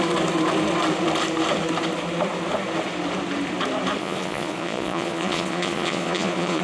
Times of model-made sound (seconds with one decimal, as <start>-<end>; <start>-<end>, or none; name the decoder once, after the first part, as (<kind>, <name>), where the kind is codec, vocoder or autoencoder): 4.0-6.6 (vocoder, Vocos)